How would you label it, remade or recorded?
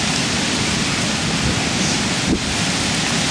recorded